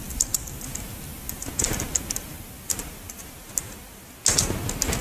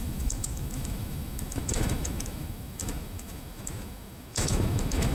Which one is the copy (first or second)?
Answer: second